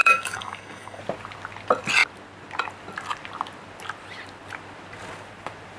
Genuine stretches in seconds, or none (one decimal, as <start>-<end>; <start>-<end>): 1.0-5.8